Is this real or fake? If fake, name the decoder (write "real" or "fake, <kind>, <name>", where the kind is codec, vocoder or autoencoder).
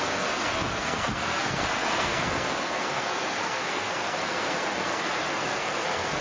fake, codec, SNAC